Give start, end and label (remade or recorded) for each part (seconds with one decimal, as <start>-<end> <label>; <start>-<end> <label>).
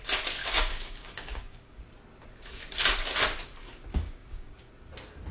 0.0-0.4 recorded; 0.4-1.8 remade; 1.8-3.9 recorded; 3.9-4.7 remade; 4.7-5.3 recorded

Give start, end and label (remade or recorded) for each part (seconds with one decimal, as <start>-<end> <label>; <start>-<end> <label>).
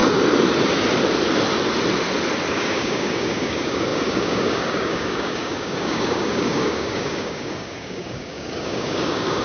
0.0-2.5 recorded; 2.5-9.4 remade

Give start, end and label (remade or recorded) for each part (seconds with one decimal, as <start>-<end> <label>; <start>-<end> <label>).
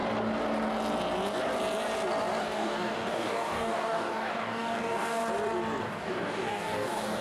0.0-2.4 recorded; 2.4-5.2 remade; 5.2-5.8 recorded; 5.8-7.2 remade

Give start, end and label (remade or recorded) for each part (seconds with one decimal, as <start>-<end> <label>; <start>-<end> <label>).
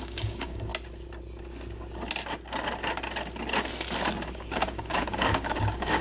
0.0-0.7 remade; 0.7-4.3 recorded; 4.3-6.0 remade